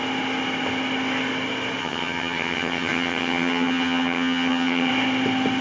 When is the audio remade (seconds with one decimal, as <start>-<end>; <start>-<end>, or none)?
1.8-4.9